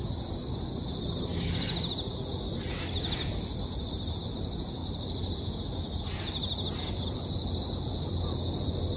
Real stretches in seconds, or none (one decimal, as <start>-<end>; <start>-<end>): 0.0-9.0